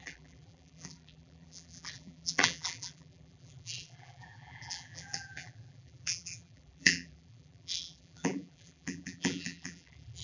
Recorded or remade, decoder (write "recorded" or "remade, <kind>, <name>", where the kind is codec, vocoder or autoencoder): remade, vocoder, BigVGAN v2